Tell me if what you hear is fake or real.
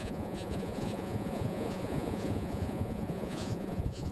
fake